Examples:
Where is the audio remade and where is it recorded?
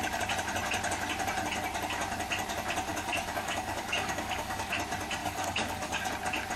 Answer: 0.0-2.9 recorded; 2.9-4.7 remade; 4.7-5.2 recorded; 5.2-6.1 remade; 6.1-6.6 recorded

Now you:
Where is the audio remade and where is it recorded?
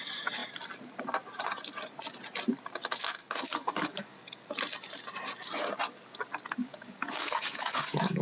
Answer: 0.0-3.2 recorded; 3.2-4.2 remade; 4.2-6.6 recorded; 6.6-8.2 remade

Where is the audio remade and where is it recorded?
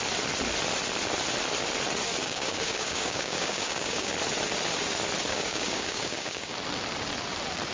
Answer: 0.0-2.2 recorded; 2.2-4.1 remade; 4.1-5.3 recorded; 5.3-6.5 remade; 6.5-7.7 recorded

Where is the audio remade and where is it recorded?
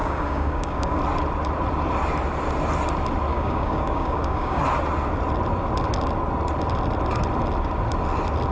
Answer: 0.0-1.0 remade; 1.0-3.3 recorded; 3.3-4.6 remade; 4.6-8.5 recorded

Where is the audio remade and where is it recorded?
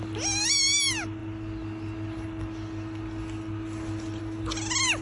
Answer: 0.0-5.0 recorded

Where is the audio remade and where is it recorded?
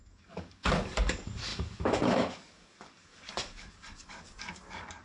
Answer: 0.0-5.0 remade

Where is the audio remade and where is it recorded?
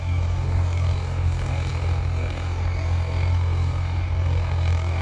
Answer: 0.0-5.0 remade